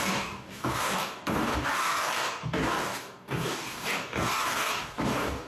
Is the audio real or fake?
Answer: fake